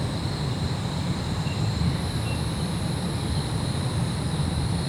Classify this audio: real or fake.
real